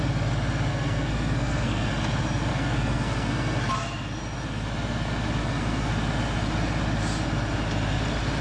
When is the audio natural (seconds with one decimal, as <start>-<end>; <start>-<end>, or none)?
0.0-0.7; 1.9-2.5; 3.7-5.4; 5.9-8.4